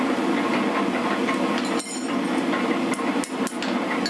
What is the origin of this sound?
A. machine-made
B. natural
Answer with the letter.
B